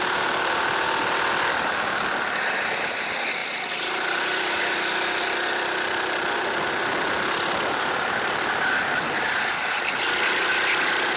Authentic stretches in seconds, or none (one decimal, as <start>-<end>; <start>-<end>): 0.0-11.2